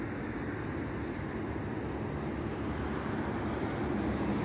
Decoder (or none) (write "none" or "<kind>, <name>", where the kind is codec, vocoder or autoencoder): none